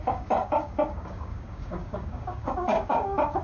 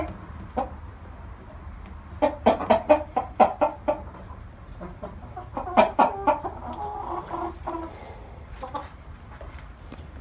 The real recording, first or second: second